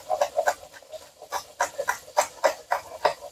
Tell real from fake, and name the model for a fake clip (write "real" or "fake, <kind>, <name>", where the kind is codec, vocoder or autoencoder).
real